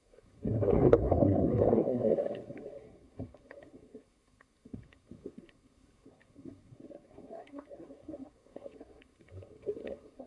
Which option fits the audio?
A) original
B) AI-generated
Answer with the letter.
B